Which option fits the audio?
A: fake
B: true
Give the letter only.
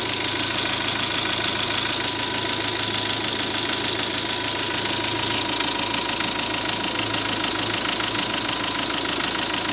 B